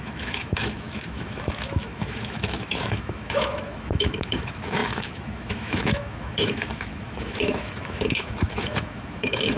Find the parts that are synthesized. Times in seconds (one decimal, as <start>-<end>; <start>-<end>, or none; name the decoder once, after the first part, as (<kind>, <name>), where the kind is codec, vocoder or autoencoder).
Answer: 0.0-9.6 (autoencoder, DAC-VAE)